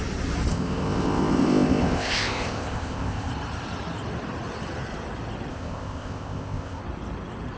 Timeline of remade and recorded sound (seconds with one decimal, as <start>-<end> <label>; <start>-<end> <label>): 0.0-0.5 recorded; 0.5-3.3 remade; 3.3-5.5 recorded; 5.5-6.8 remade; 6.8-7.6 recorded